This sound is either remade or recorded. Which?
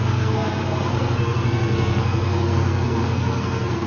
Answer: remade